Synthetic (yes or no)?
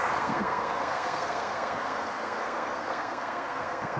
yes